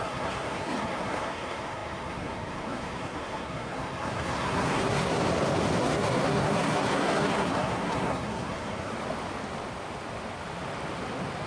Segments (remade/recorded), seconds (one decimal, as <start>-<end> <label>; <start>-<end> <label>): 0.0-5.2 remade; 5.2-5.8 recorded; 5.8-8.9 remade; 8.9-11.5 recorded